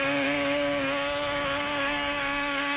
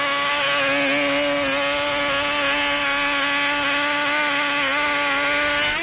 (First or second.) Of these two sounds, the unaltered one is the second